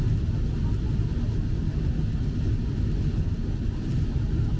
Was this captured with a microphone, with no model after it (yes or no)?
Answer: yes